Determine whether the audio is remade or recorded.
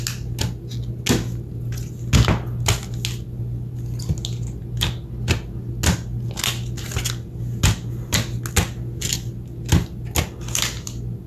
recorded